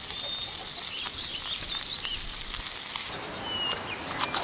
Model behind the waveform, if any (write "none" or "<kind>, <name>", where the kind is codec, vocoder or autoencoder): none